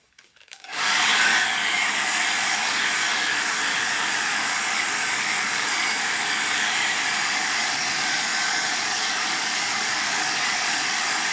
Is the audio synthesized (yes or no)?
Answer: yes